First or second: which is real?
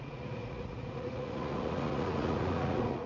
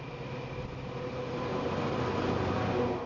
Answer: second